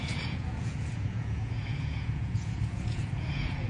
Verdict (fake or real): fake